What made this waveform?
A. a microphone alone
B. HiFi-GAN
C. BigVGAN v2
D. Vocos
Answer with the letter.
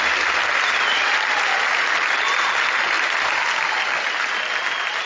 A